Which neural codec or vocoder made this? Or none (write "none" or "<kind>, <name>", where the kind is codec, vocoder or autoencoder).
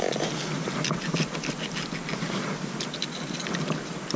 none